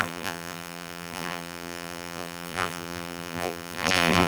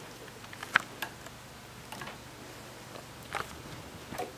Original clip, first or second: second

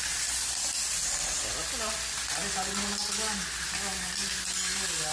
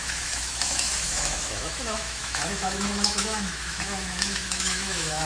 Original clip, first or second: first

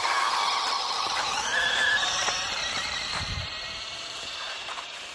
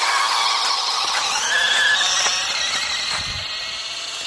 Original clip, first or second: second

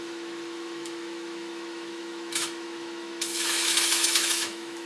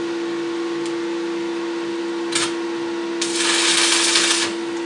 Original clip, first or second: second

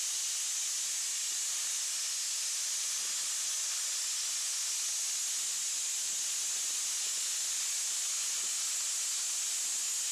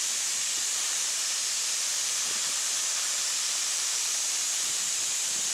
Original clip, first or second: first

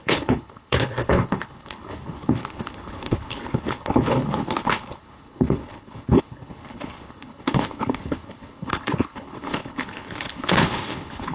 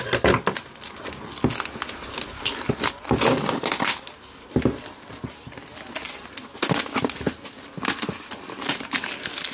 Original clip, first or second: second